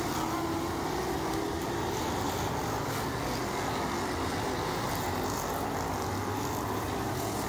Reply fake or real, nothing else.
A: real